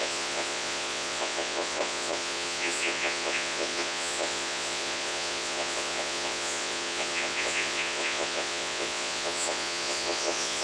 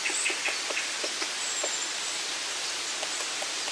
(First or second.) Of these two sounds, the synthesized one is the first